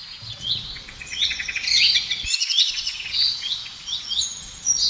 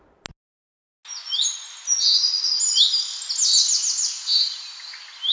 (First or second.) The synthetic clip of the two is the first